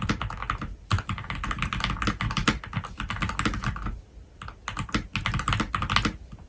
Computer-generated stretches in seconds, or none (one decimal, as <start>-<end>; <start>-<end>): none